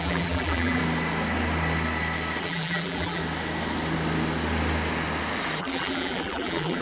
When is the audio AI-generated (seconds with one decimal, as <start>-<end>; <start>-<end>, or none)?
0.0-0.8; 2.4-3.2; 5.6-6.8